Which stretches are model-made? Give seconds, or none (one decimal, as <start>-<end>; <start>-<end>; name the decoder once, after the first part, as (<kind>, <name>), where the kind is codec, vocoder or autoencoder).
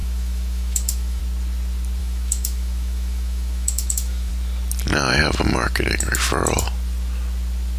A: 0.0-1.2 (autoencoder, DAC-VAE); 2.0-4.3